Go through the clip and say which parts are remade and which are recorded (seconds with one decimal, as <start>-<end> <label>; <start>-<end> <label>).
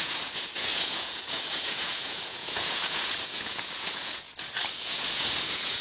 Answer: 0.0-5.8 remade